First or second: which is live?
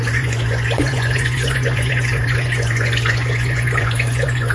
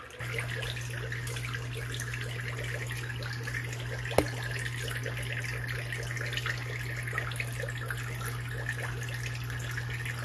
second